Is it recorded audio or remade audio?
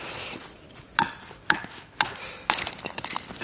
recorded